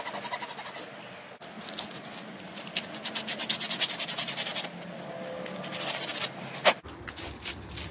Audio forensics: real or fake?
real